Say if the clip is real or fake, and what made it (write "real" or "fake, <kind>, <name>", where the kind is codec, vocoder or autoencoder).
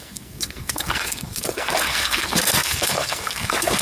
fake, codec, SNAC